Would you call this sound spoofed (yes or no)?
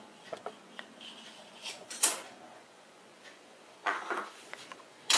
yes